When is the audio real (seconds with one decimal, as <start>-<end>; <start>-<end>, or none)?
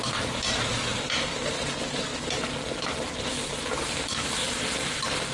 0.0-5.3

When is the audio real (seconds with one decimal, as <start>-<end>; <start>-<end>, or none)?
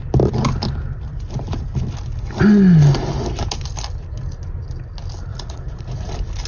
0.0-5.3; 6.1-6.5